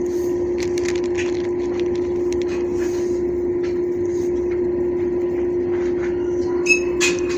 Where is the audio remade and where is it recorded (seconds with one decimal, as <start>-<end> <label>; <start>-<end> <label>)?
0.0-7.4 recorded